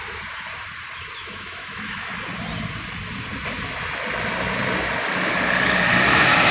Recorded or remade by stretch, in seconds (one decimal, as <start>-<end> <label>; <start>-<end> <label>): 0.0-1.2 recorded; 1.2-2.1 remade; 2.1-6.5 recorded